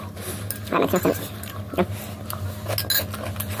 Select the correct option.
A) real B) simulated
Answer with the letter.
A